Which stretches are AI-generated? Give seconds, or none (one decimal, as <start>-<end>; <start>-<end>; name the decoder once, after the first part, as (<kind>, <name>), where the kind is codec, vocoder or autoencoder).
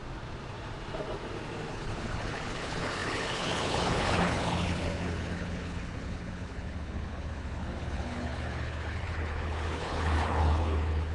1.7-11.1 (codec, HILCodec)